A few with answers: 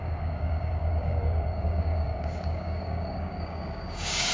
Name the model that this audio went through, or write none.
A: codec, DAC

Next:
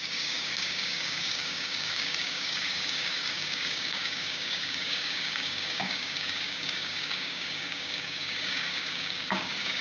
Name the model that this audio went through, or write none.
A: codec, DAC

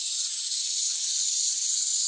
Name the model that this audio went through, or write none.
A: none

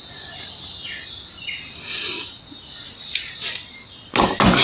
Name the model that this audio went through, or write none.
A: none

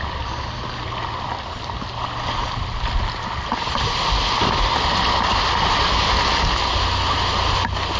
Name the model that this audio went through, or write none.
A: none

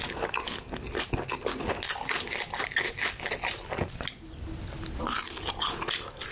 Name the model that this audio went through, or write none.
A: none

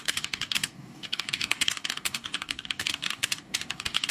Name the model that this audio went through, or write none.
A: codec, DAC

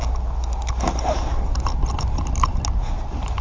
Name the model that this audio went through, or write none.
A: none